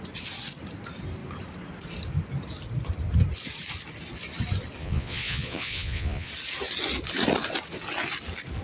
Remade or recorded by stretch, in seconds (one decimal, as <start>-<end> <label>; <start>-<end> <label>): 0.0-4.8 recorded; 4.8-6.3 remade; 6.3-8.6 recorded